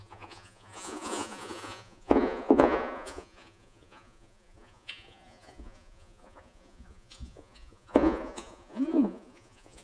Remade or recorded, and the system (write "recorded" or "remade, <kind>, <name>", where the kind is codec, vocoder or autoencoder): remade, vocoder, Vocos